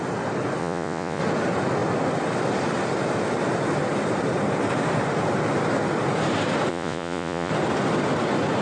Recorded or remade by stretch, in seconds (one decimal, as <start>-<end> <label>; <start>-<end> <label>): 0.0-0.6 recorded; 0.6-1.2 remade; 1.2-6.7 recorded; 6.7-7.5 remade; 7.5-8.6 recorded